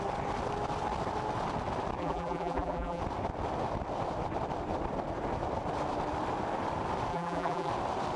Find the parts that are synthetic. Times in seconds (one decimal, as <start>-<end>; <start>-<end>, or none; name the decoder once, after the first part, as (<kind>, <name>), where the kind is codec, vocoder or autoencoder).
2.0-3.0 (vocoder, BigVGAN v2); 7.1-7.7